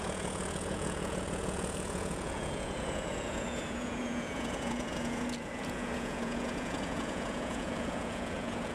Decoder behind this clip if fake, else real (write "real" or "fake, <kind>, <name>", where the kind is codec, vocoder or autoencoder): fake, vocoder, Vocos